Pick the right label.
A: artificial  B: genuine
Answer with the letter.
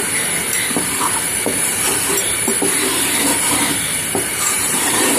A